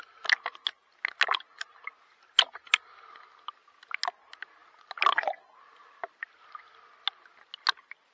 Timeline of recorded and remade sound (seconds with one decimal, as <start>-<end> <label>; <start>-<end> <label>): 0.0-8.1 recorded